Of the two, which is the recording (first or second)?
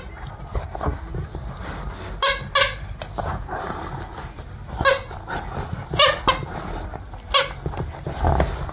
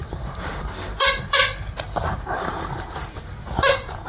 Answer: first